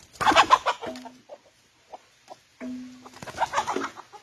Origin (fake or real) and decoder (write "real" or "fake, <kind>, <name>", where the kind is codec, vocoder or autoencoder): real